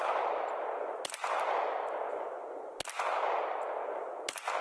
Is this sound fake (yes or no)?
no